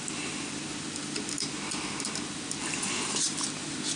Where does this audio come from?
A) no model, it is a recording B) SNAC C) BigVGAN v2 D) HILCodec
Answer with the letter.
A